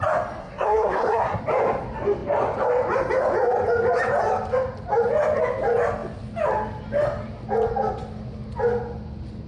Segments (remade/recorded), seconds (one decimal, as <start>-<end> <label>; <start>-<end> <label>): 0.0-0.4 recorded; 0.4-1.4 remade; 1.4-9.5 recorded